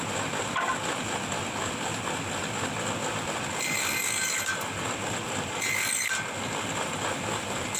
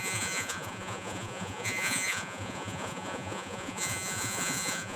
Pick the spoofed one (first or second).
second